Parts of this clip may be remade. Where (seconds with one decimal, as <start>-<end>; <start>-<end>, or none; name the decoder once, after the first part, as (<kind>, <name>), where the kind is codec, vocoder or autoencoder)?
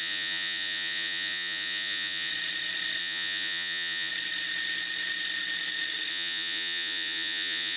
0.0-2.3 (vocoder, Vocos); 3.0-4.1; 6.1-7.8